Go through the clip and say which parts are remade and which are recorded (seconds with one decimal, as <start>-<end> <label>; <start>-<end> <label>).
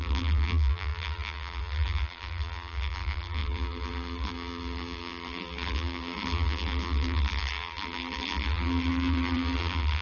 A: 0.0-10.0 remade